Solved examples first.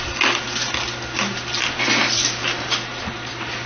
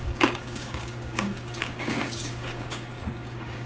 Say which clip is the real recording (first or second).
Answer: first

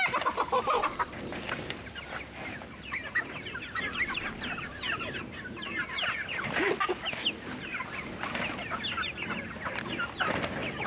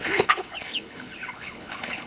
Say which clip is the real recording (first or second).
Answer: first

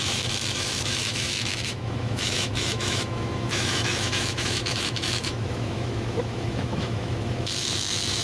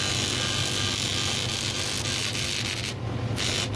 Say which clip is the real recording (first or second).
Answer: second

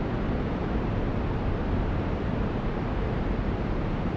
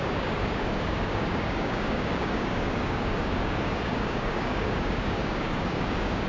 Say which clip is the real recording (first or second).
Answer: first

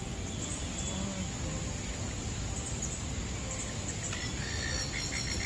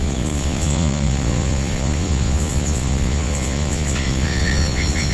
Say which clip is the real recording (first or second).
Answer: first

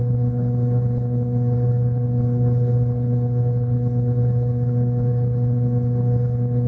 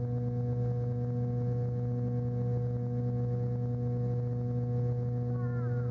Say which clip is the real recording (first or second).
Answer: second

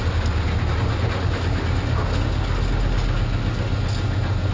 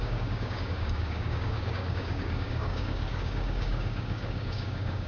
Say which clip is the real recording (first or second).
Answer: first